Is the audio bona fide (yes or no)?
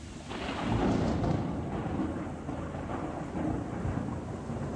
yes